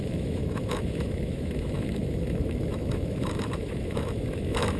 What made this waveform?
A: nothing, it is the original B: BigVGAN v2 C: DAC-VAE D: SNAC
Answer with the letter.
C